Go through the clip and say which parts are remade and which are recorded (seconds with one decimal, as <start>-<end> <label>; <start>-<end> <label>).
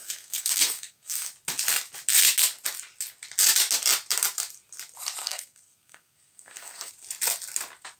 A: 0.0-1.3 remade; 1.3-5.2 recorded; 5.2-6.9 remade; 6.9-8.0 recorded